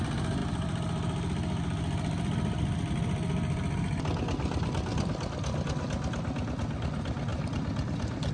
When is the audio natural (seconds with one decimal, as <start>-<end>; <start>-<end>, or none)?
0.0-7.3

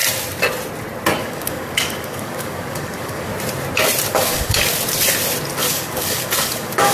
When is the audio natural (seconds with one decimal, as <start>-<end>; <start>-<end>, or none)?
0.0-1.2; 3.3-4.1; 4.7-5.7

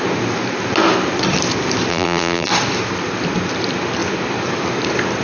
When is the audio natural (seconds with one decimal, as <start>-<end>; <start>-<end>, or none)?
0.0-1.9; 2.5-5.2

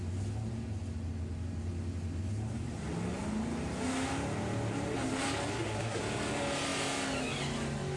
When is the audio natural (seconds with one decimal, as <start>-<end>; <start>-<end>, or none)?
0.0-5.5; 6.0-8.0

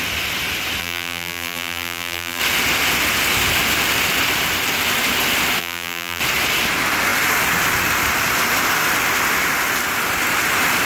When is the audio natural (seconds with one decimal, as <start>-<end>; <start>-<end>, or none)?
0.0-0.8; 2.4-5.6; 6.2-10.9

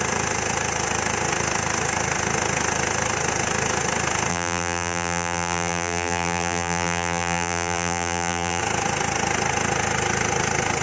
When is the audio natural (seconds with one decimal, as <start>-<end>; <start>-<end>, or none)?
0.0-4.3; 8.6-10.8

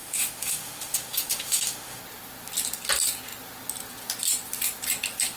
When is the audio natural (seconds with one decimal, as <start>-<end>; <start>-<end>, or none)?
2.0-5.4

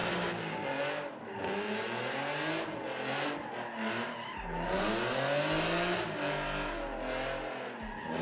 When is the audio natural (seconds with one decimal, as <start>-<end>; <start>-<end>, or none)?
0.0-8.2